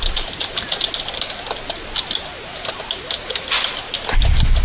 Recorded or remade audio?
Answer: recorded